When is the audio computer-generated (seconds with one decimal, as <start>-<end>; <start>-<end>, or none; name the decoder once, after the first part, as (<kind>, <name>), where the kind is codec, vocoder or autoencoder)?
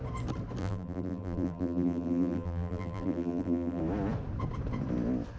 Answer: 0.6-3.8 (vocoder, BigVGAN v2)